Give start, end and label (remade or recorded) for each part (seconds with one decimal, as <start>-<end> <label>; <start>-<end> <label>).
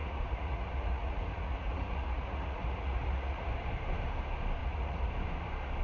0.0-3.5 remade; 3.5-4.6 recorded; 4.6-5.1 remade; 5.1-5.8 recorded